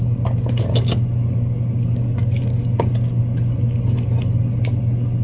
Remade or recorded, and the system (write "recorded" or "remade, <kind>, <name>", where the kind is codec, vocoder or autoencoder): recorded